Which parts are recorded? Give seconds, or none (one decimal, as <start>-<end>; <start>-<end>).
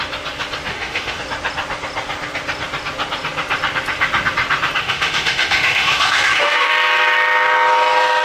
0.0-0.7; 1.2-4.8; 6.7-8.2